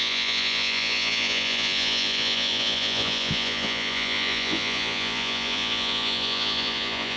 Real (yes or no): no